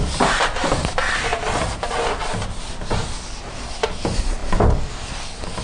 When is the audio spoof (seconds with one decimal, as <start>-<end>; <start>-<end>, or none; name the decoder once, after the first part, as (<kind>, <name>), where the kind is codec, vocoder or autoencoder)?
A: none